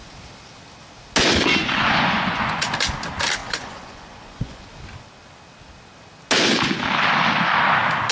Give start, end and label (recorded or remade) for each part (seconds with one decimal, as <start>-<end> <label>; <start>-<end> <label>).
0.0-1.6 recorded; 1.6-2.7 remade; 2.7-3.4 recorded; 3.4-4.7 remade; 4.7-8.1 recorded

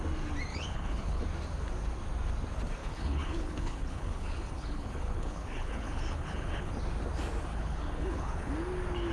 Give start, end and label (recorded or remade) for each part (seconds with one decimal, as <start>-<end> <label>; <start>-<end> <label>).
0.0-0.5 recorded; 0.5-1.2 remade; 1.2-2.8 recorded; 2.8-6.7 remade; 6.7-7.5 recorded; 7.5-8.5 remade; 8.5-9.1 recorded

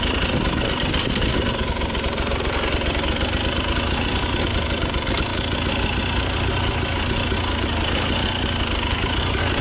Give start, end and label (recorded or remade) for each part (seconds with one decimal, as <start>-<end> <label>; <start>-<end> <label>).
0.0-9.6 recorded